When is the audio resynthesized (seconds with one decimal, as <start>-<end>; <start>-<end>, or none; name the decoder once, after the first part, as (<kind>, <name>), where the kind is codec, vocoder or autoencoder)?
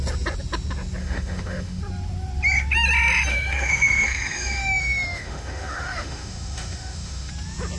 1.0-1.8 (autoencoder, DAC-VAE); 3.3-7.3